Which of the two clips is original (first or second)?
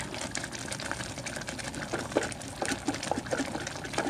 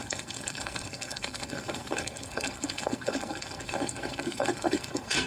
first